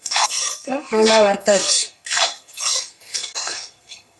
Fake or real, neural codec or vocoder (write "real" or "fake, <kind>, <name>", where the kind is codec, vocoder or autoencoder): fake, codec, SNAC